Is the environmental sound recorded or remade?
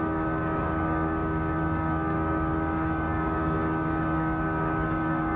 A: remade